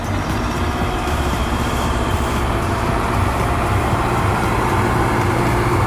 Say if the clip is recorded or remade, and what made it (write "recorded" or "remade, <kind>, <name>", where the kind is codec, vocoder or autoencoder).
remade, vocoder, BigVGAN v2